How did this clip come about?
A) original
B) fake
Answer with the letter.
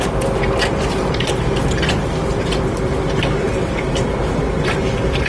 A